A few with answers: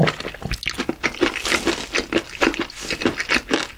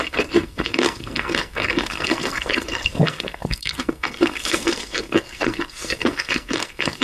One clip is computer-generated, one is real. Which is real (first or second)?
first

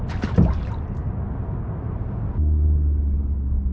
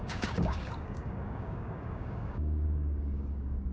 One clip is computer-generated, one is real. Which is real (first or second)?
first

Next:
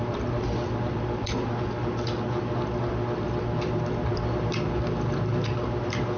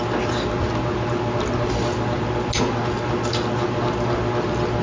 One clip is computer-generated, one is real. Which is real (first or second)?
second